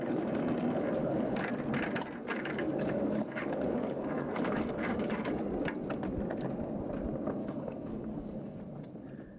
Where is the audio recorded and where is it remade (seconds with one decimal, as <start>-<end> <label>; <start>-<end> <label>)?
0.0-1.0 recorded; 1.0-1.5 remade; 1.5-2.3 recorded; 2.3-5.3 remade; 5.3-7.4 recorded; 7.4-8.6 remade; 8.6-9.4 recorded